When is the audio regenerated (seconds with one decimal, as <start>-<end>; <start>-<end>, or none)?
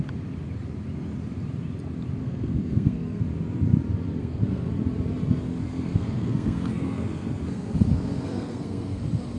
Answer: 2.2-3.2; 4.2-4.7; 5.6-9.0